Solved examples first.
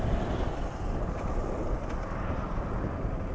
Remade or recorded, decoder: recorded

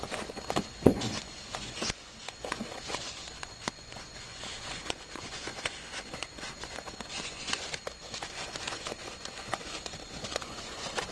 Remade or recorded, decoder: remade, vocoder, Vocos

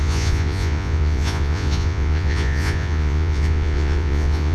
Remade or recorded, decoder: remade, vocoder, Vocos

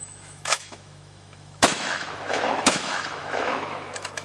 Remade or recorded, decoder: remade, autoencoder, DAC-VAE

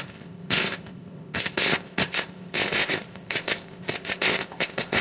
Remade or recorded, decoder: remade, codec, ZipCodec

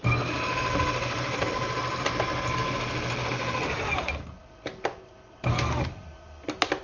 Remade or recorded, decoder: recorded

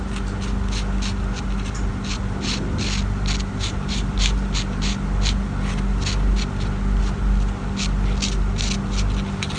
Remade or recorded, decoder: recorded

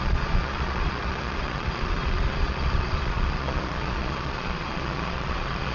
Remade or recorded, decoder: remade, vocoder, Vocos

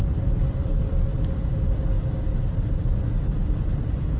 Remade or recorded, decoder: recorded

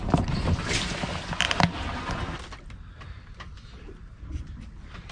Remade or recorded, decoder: recorded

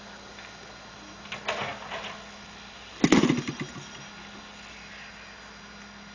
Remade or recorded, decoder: recorded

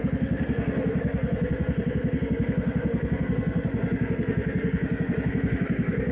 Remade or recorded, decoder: remade, codec, SNAC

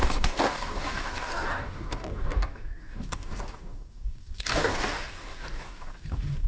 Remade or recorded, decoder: remade, codec, DAC